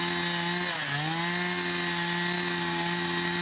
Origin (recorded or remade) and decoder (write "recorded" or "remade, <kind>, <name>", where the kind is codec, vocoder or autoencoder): recorded